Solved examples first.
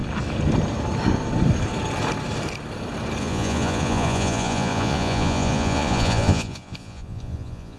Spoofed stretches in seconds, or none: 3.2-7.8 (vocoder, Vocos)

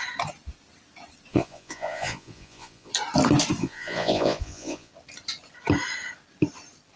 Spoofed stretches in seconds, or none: 1.3-2.9 (vocoder, Vocos); 3.6-4.9

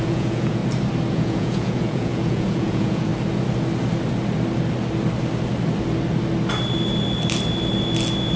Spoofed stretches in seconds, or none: 0.0-0.6 (vocoder, Vocos); 1.1-3.1

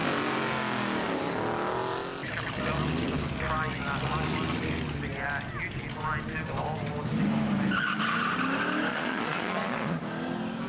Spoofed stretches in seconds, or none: 8.9-10.0 (vocoder, Vocos)

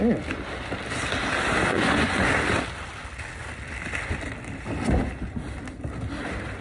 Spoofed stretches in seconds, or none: 1.7-2.3 (vocoder, Vocos)